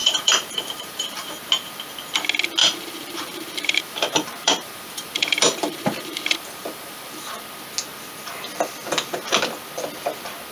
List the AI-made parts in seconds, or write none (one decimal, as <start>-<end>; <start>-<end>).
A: 0.0-1.3; 2.6-7.4